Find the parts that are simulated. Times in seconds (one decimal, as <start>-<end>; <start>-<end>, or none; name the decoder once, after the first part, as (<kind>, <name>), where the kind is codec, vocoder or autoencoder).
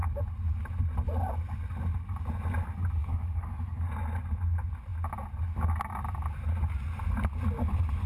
3.0-3.9 (codec, DAC)